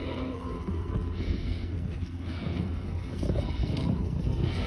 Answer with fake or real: fake